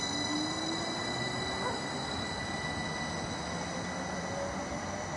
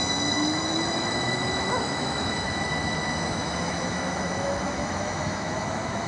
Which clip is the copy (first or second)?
second